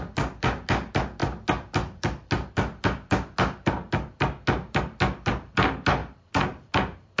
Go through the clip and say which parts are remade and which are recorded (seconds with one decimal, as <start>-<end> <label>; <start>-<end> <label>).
0.0-7.2 recorded